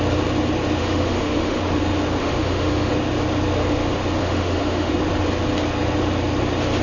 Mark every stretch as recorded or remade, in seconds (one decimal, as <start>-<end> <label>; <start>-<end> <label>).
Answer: 0.0-0.8 recorded; 0.8-1.6 remade; 1.6-2.2 recorded; 2.2-2.9 remade; 2.9-4.2 recorded; 4.2-4.9 remade; 4.9-6.8 recorded

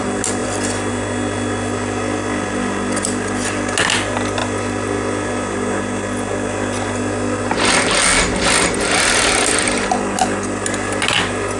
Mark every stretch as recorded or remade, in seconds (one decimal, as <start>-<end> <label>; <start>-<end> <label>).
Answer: 0.0-0.4 recorded; 0.4-0.9 remade; 0.9-11.6 recorded

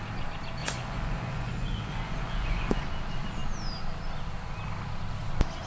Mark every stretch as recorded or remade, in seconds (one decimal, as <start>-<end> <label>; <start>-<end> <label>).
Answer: 0.0-0.6 recorded; 0.6-2.8 remade; 2.8-5.7 recorded

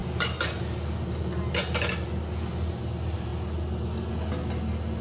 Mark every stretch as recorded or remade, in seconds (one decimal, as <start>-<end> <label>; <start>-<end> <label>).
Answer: 0.0-5.0 recorded

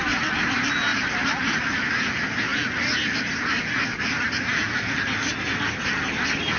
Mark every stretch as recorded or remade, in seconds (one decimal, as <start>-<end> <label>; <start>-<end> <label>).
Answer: 0.0-0.9 recorded; 0.9-1.9 remade; 1.9-6.6 recorded

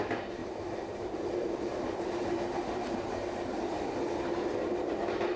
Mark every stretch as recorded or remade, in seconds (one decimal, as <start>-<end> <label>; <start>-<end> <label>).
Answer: 0.0-0.4 recorded; 0.4-3.6 remade; 3.6-5.4 recorded

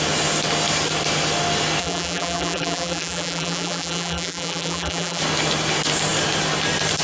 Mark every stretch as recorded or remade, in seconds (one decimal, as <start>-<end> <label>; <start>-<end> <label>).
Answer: 0.0-1.8 recorded; 1.8-5.2 remade; 5.2-7.0 recorded